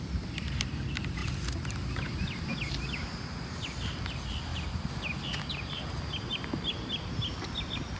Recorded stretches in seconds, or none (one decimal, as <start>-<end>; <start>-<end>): 0.0-8.0